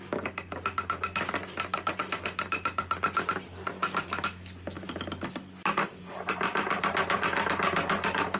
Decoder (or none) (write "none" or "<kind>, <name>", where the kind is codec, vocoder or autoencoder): none